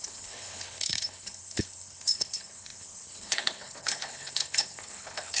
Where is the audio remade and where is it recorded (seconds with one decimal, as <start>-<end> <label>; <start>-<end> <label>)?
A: 0.0-5.4 remade